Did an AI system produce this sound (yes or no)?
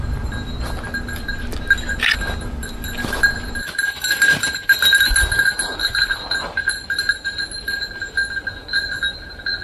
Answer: no